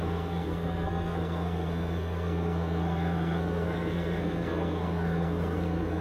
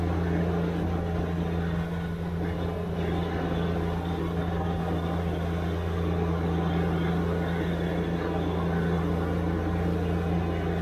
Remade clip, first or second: first